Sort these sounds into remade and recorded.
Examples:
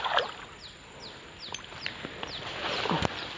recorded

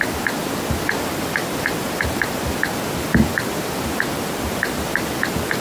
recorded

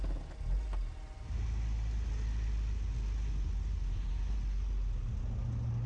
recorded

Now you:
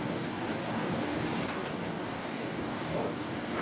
remade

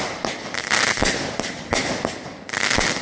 recorded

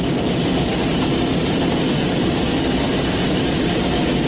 recorded